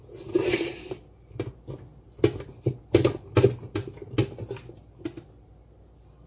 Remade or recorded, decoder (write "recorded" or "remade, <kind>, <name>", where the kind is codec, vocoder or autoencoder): recorded